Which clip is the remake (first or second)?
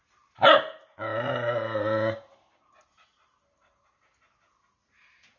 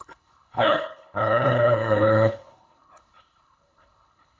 second